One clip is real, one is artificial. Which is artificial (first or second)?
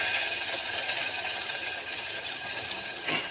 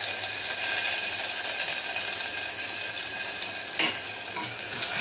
first